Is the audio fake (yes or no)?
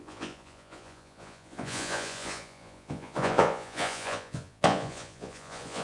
yes